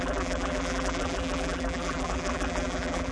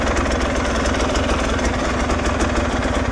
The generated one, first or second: first